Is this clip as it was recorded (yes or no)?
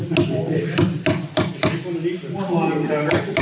yes